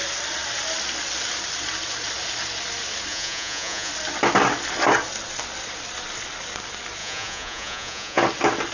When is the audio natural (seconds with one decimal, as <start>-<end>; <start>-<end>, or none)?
0.0-3.1; 3.9-7.0; 8.2-8.7